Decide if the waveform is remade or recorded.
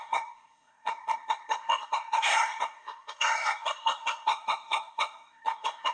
remade